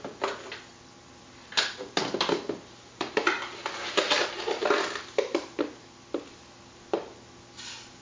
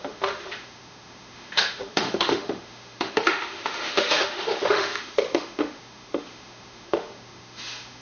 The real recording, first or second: first